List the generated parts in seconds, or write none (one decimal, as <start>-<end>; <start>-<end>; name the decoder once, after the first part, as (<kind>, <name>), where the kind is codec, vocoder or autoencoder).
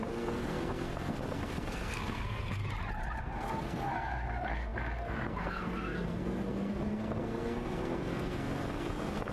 0.0-2.6 (codec, SNAC); 3.2-9.3